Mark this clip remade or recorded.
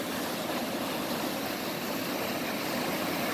recorded